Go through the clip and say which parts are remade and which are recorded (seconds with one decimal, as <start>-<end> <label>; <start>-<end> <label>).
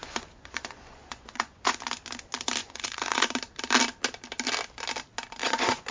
0.0-1.8 remade; 1.8-2.6 recorded; 2.6-3.2 remade; 3.2-5.4 recorded; 5.4-5.9 remade